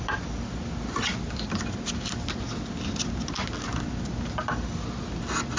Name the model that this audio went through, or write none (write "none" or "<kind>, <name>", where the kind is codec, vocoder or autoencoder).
none